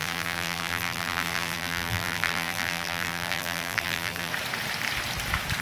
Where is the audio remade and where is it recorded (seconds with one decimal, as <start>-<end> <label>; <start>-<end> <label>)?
0.0-4.3 remade; 4.3-5.6 recorded